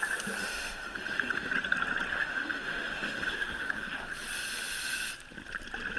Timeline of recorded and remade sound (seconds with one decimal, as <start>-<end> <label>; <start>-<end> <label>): 0.0-0.4 recorded; 0.4-1.5 remade; 1.5-2.1 recorded; 2.1-4.1 remade; 4.1-6.0 recorded